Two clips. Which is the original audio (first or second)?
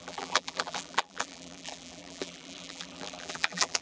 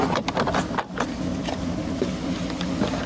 second